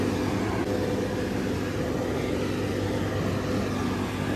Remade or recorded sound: recorded